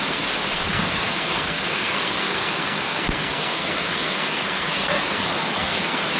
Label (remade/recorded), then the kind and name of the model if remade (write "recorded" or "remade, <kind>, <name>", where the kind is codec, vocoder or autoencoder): remade, codec, SNAC